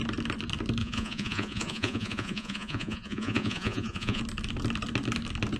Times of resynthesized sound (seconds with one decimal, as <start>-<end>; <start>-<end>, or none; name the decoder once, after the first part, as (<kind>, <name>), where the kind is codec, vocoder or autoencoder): 0.8-4.2 (vocoder, Vocos)